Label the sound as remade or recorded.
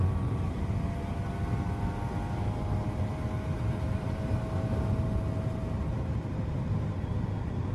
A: recorded